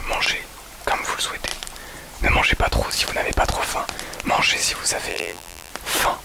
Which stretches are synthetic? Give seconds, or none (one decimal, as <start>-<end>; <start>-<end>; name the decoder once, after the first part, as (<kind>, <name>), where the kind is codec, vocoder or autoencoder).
5.1-5.7 (vocoder, BigVGAN v2)